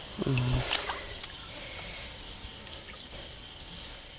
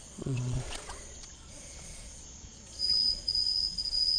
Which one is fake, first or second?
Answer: second